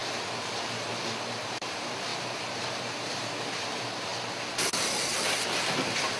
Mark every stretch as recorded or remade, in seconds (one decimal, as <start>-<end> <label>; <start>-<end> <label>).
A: 0.0-1.4 recorded; 1.4-4.1 remade; 4.1-6.2 recorded